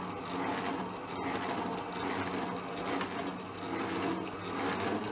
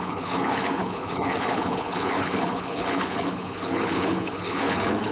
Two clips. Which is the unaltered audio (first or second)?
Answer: first